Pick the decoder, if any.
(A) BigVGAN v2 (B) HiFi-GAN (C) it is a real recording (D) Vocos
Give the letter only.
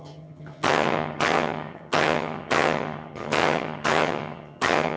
B